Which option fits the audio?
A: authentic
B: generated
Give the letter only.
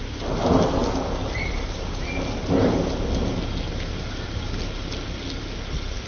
A